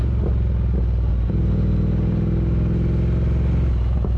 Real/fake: real